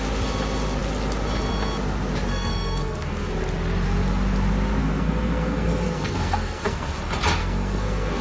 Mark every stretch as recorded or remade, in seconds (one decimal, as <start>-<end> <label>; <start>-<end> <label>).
0.0-2.3 recorded; 2.3-3.3 remade; 3.3-4.8 recorded; 4.8-6.9 remade; 6.9-7.4 recorded; 7.4-8.2 remade